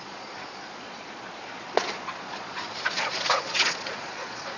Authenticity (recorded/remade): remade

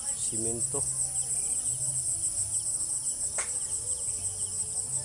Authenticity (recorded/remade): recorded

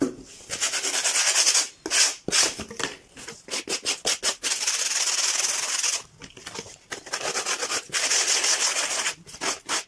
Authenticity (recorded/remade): recorded